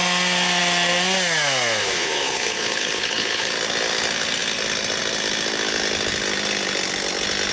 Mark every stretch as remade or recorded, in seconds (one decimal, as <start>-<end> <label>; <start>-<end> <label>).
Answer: 0.0-1.8 recorded; 1.8-3.5 remade; 3.5-7.5 recorded